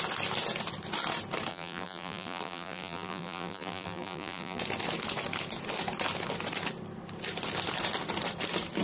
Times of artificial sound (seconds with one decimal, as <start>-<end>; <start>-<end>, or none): 1.5-4.6